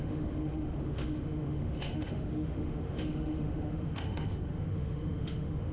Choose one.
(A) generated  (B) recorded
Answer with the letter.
A